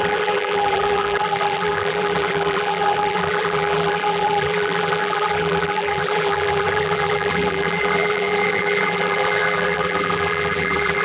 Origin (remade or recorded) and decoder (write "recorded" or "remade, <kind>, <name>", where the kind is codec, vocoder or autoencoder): remade, vocoder, BigVGAN v2